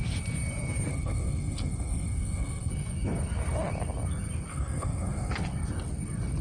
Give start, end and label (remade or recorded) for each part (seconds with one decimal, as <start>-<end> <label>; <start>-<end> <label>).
0.0-0.9 recorded; 0.9-2.7 remade; 2.7-4.5 recorded; 4.5-5.3 remade; 5.3-6.4 recorded